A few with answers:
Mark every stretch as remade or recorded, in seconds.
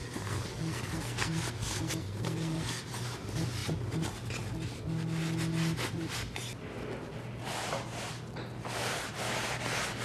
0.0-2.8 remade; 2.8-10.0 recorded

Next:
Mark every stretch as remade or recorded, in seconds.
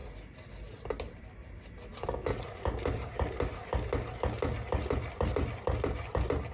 0.0-6.5 recorded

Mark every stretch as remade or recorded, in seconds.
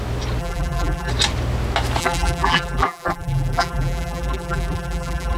0.0-0.4 recorded; 0.4-1.1 remade; 1.1-2.0 recorded; 2.0-5.4 remade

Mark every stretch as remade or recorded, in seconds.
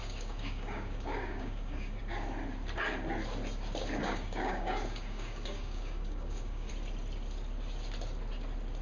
0.0-2.0 remade; 2.0-4.0 recorded; 4.0-6.7 remade; 6.7-8.8 recorded